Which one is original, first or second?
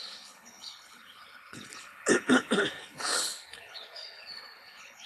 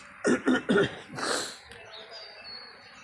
second